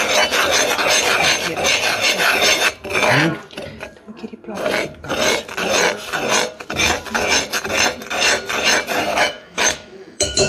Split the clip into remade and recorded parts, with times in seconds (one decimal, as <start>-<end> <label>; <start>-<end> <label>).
0.0-9.1 recorded; 9.1-10.5 remade

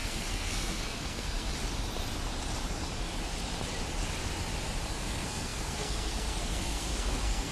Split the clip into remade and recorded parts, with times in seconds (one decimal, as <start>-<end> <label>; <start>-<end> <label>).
0.0-1.5 remade; 1.5-4.9 recorded; 4.9-7.5 remade

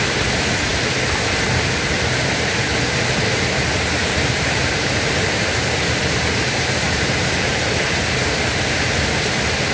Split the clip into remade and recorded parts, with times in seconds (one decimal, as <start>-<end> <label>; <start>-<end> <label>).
0.0-4.0 recorded; 4.0-7.5 remade; 7.5-9.7 recorded